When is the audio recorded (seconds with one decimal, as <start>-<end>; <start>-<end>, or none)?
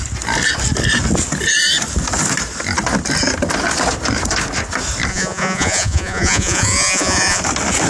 0.0-5.1; 7.4-7.9